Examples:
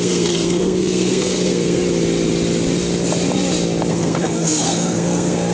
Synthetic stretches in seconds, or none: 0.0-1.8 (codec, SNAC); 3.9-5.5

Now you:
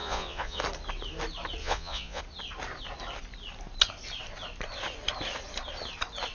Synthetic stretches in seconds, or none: 0.0-0.6 (vocoder, Vocos); 1.6-2.2